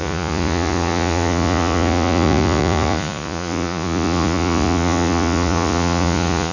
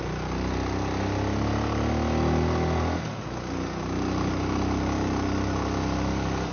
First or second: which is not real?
first